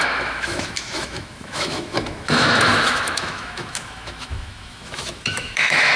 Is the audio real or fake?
fake